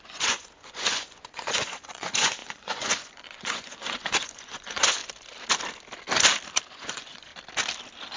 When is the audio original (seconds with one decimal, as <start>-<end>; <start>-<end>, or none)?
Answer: 5.0-6.7; 7.3-8.2